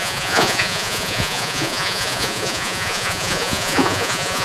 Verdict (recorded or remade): remade